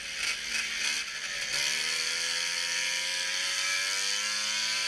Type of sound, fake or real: real